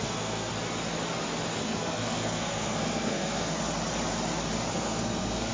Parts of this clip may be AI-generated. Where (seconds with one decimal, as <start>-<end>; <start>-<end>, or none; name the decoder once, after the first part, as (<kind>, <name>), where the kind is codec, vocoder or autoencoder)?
0.0-0.5 (codec, SNAC); 1.6-3.6; 4.7-5.5